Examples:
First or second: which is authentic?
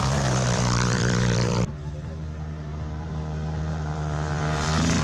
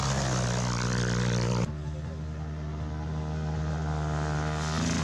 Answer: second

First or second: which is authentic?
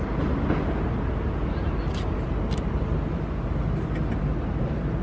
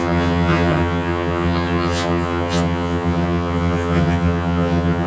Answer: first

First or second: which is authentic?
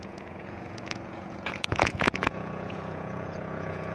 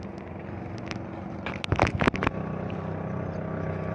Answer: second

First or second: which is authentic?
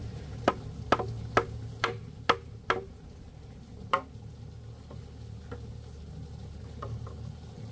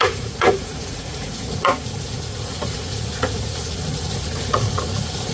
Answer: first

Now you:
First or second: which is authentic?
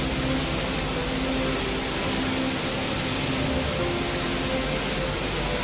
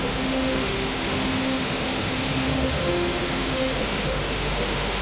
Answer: first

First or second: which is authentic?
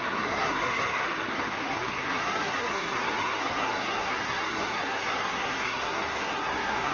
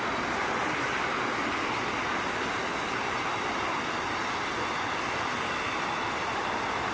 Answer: second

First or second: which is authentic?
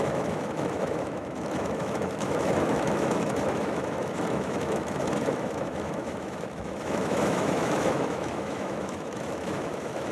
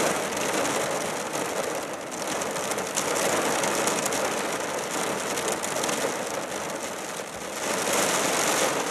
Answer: second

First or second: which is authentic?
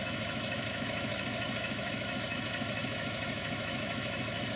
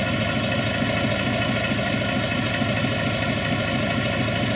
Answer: second